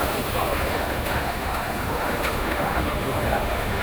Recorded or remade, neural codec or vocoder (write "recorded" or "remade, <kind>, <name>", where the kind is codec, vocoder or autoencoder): remade, autoencoder, DAC-VAE